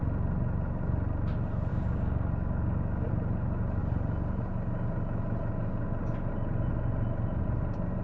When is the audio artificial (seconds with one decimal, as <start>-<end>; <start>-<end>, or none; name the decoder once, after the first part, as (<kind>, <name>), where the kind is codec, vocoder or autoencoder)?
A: 1.7-3.1 (codec, DAC)